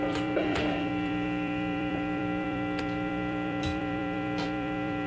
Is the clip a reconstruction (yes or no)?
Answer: yes